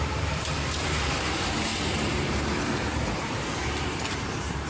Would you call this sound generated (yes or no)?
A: yes